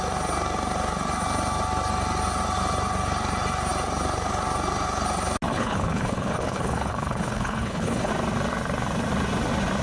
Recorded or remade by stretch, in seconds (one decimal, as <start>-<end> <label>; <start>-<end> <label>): 0.0-5.5 recorded; 5.5-8.1 remade; 8.1-9.8 recorded